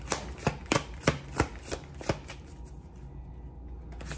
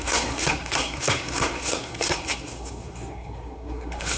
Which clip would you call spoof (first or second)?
second